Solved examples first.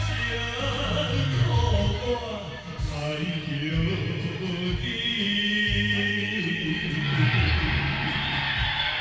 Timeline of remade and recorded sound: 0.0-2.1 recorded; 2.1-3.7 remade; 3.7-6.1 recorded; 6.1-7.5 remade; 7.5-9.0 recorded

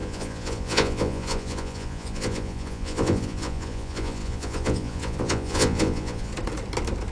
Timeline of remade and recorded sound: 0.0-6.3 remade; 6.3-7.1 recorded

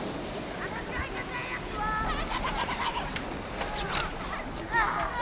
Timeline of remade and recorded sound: 0.0-5.2 recorded

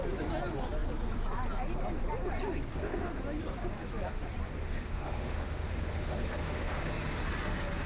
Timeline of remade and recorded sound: 0.0-2.7 recorded; 2.7-3.2 remade; 3.2-4.6 recorded; 4.6-6.9 remade; 6.9-7.9 recorded

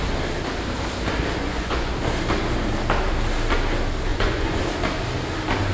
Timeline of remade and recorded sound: 0.0-1.4 recorded; 1.4-1.9 remade; 1.9-4.1 recorded; 4.1-4.6 remade; 4.6-5.7 recorded

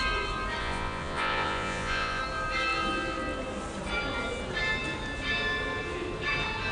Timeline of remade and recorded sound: 0.0-0.6 recorded; 0.6-2.2 remade; 2.2-6.7 recorded

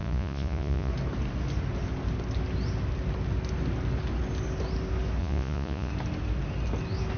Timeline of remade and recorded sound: 0.0-0.9 remade; 0.9-5.2 recorded; 5.2-5.9 remade; 5.9-7.2 recorded

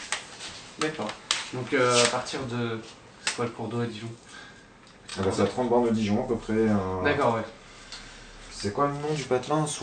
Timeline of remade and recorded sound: 0.0-9.8 recorded